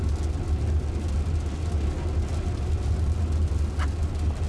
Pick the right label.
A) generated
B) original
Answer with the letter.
B